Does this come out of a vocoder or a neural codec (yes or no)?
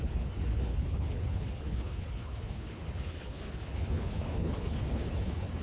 yes